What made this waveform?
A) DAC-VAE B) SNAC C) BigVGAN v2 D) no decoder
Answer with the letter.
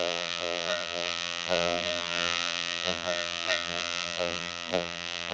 C